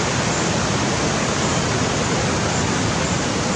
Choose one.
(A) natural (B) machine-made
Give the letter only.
A